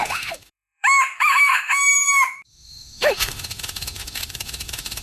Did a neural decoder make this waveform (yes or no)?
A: yes